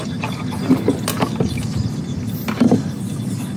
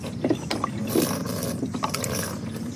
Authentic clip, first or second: first